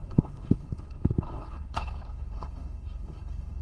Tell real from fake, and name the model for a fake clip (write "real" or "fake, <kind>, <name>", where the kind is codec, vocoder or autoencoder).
fake, codec, HILCodec